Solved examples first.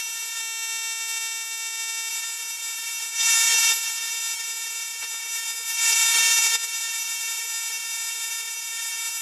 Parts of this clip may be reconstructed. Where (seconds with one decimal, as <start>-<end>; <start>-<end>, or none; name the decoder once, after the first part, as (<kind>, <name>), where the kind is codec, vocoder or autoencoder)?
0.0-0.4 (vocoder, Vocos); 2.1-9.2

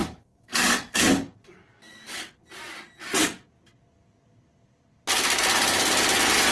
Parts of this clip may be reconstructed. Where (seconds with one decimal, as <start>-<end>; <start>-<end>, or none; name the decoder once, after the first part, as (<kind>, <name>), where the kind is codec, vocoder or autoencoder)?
0.0-2.3 (codec, DAC)

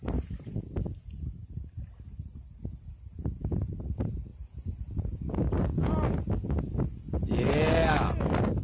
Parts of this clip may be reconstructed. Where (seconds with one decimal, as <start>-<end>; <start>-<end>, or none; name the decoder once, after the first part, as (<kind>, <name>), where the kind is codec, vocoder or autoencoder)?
none

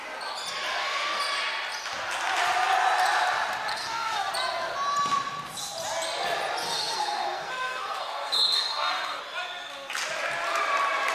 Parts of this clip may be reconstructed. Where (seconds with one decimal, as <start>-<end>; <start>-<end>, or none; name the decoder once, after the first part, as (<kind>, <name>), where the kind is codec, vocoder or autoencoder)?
0.7-1.2 (codec, SNAC); 3.7-4.3; 6.7-9.2

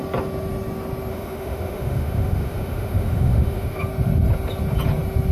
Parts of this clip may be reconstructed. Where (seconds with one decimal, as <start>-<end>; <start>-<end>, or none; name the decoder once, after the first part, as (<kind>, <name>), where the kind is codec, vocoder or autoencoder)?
1.1-3.8 (autoencoder, DAC-VAE)

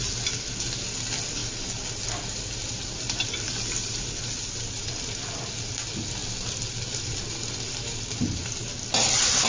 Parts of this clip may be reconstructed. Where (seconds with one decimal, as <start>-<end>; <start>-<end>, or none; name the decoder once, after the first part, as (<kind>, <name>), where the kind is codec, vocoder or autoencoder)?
none

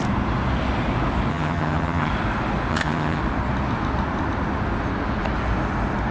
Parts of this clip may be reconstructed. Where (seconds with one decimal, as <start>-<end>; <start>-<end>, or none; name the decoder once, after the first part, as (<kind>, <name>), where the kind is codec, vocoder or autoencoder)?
1.3-2.1 (vocoder, HiFi-GAN); 2.7-3.2

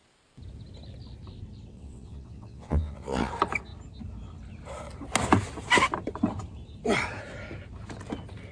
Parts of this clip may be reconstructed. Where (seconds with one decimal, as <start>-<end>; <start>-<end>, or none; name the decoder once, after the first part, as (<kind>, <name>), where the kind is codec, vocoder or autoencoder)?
1.7-3.3 (vocoder, WaveNeXt)